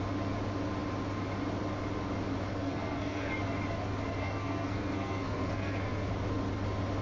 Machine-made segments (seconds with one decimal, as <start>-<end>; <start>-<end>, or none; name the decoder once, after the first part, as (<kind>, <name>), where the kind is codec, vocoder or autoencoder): 2.5-3.3 (codec, SNAC); 4.2-6.1